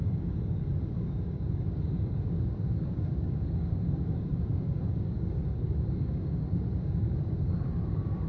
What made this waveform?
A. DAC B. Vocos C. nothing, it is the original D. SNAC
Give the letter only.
A